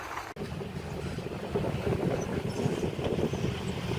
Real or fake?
real